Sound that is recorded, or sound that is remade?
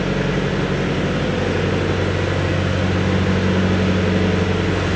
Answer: recorded